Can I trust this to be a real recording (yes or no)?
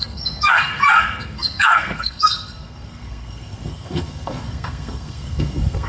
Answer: no